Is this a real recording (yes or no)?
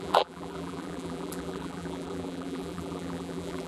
no